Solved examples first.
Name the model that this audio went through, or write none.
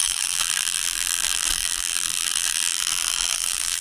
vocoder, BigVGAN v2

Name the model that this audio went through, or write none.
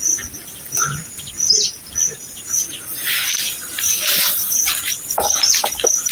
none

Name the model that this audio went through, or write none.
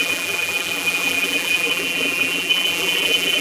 vocoder, BigVGAN v2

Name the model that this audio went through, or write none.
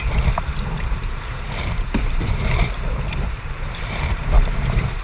vocoder, BigVGAN v2